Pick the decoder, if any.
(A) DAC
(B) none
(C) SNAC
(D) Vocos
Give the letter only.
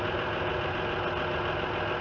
B